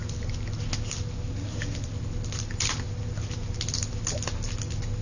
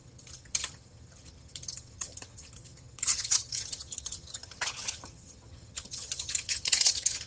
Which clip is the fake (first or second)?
second